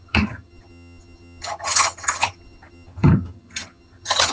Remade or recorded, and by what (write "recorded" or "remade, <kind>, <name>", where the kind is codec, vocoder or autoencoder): remade, vocoder, HiFi-GAN